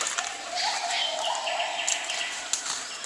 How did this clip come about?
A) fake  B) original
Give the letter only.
B